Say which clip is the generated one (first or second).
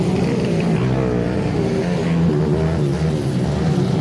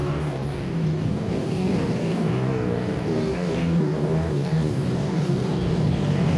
second